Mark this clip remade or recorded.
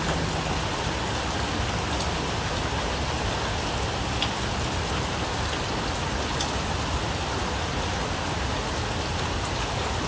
recorded